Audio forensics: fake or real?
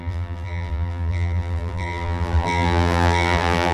fake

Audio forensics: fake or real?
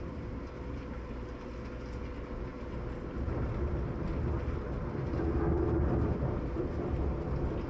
real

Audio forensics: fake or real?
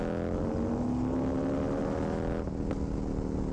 real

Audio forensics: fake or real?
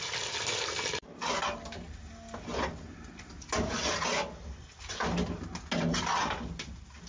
real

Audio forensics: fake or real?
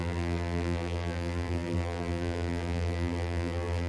fake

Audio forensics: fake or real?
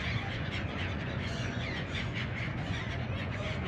fake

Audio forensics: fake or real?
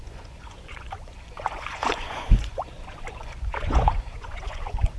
fake